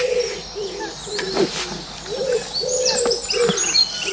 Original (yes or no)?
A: yes